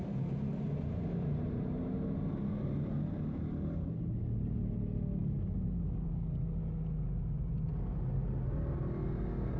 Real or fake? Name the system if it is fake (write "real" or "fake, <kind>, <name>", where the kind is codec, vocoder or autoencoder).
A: real